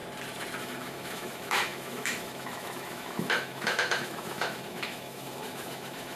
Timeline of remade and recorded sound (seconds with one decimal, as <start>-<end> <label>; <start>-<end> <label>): 0.0-0.6 recorded; 0.6-6.2 remade